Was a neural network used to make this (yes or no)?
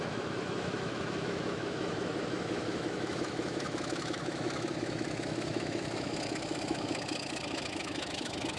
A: yes